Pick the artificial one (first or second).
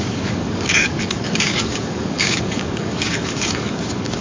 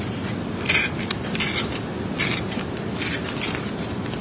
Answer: first